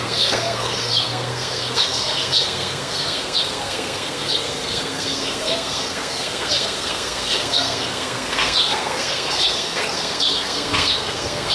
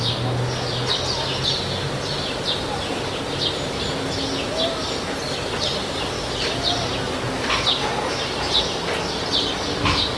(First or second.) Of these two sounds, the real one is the second